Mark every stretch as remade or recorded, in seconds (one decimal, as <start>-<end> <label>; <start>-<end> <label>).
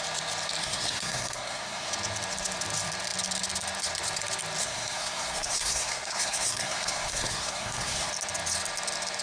0.0-0.6 recorded; 0.6-1.9 remade; 1.9-4.6 recorded; 4.6-8.1 remade; 8.1-9.2 recorded